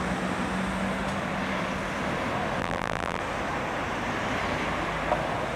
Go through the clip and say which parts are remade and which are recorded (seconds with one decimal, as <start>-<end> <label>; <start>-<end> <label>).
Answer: 0.0-2.6 recorded; 2.6-3.2 remade; 3.2-5.6 recorded